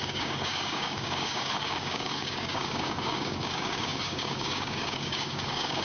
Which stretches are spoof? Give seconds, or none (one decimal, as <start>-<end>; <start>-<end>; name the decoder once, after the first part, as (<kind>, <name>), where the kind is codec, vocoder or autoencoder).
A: 0.0-5.8 (codec, DAC)